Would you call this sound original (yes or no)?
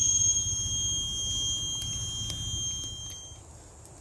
yes